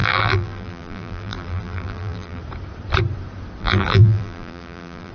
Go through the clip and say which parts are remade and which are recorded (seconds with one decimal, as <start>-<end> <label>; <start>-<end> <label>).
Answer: 0.0-2.4 remade; 2.4-3.6 recorded; 3.6-5.1 remade